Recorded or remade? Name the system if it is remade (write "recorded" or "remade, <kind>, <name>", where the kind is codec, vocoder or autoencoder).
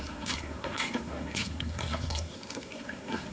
remade, codec, SNAC